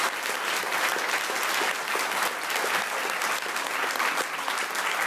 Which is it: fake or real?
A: real